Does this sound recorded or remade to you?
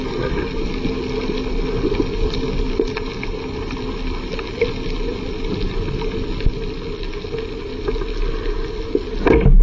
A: recorded